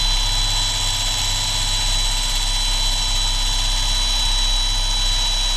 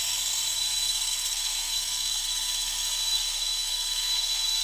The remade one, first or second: second